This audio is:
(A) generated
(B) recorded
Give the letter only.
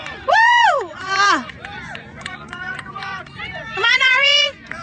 A